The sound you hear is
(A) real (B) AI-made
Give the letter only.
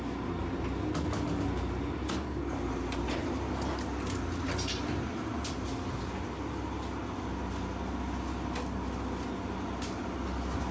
A